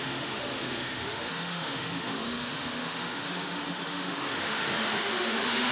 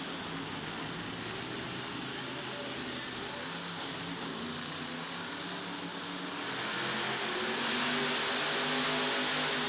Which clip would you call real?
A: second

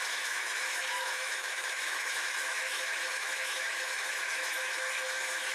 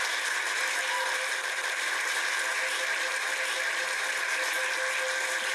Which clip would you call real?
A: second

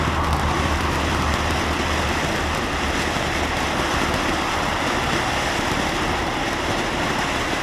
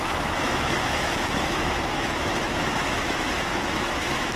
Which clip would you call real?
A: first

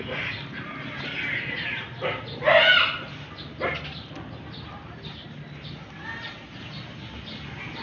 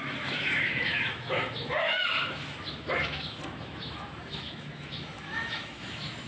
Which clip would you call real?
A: first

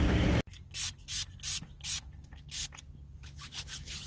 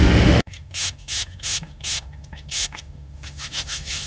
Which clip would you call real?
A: first